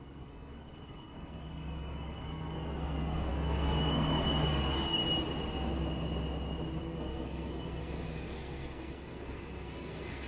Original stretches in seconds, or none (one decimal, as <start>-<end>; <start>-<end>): 5.0-6.8